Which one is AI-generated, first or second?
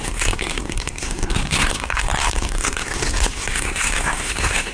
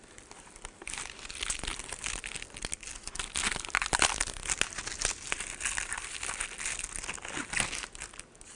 first